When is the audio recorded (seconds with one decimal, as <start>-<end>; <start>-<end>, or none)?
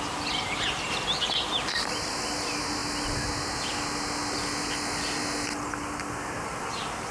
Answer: 0.0-7.1